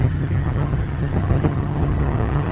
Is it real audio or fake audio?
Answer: fake